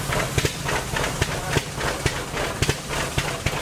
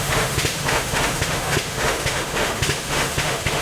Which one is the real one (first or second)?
first